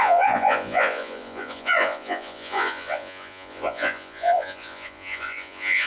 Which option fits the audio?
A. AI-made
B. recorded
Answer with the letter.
A